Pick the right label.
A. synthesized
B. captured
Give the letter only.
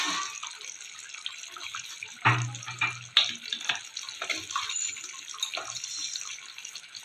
B